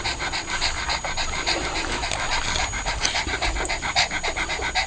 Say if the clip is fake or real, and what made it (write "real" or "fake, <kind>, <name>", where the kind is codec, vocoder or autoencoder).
real